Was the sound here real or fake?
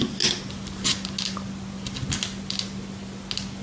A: real